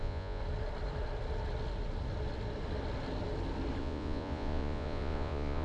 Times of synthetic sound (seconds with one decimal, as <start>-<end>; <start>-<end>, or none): 0.0-0.4; 3.8-5.6